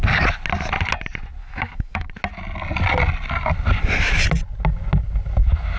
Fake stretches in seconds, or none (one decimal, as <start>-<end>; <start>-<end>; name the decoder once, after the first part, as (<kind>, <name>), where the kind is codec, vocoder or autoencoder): 1.4-2.1 (autoencoder, DAC-VAE)